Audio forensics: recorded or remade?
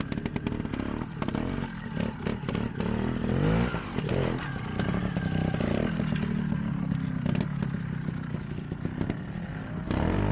recorded